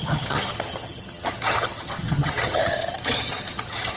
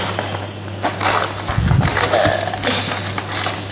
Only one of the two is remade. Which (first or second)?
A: first